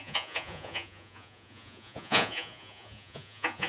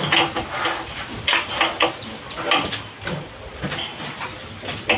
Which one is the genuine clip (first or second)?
second